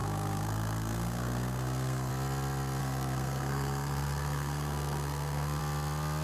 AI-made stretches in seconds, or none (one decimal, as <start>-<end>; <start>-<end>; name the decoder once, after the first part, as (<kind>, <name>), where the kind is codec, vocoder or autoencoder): 0.0-2.1 (codec, SNAC); 2.8-5.6